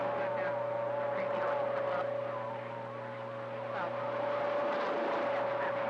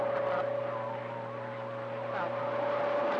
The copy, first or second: second